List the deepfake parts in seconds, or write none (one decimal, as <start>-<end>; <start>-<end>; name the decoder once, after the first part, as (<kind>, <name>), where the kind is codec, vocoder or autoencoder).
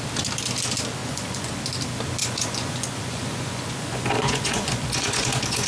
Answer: 1.0-1.6 (vocoder, Vocos); 2.2-5.7